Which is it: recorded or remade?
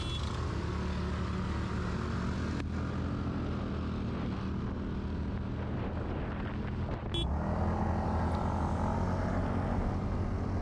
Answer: recorded